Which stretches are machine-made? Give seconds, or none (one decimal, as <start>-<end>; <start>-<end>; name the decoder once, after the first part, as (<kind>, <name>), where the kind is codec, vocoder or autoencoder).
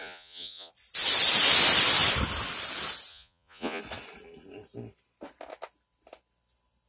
0.0-0.7 (vocoder, Vocos); 3.1-3.8